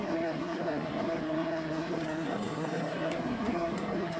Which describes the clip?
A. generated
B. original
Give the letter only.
A